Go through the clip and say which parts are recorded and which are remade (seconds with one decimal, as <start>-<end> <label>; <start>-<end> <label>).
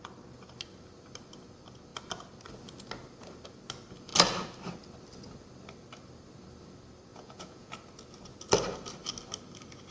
0.0-7.1 recorded; 7.1-7.7 remade; 7.7-9.9 recorded